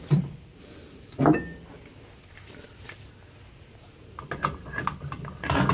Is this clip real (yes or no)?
yes